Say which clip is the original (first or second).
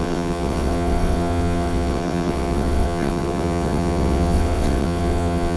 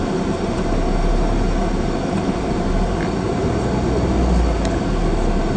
second